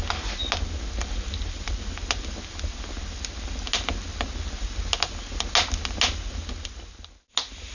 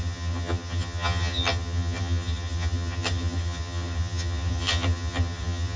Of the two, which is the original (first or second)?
first